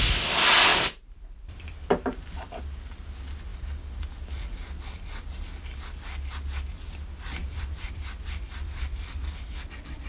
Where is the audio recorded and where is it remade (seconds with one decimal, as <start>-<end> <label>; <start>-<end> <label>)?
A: 0.0-0.7 recorded; 0.7-2.6 remade; 2.6-7.4 recorded; 7.4-8.8 remade; 8.8-10.1 recorded